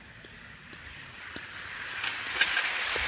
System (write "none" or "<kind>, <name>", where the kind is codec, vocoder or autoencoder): none